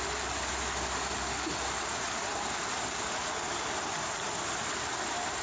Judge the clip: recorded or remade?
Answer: recorded